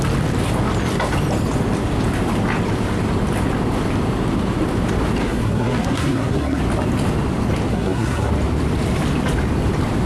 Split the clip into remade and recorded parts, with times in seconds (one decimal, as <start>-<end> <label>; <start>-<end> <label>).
0.0-5.2 recorded; 5.2-6.6 remade; 6.6-7.7 recorded; 7.7-8.3 remade; 8.3-10.1 recorded